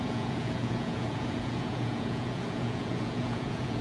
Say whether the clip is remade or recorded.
remade